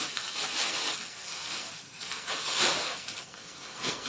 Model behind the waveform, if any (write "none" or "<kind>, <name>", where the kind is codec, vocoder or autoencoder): codec, SNAC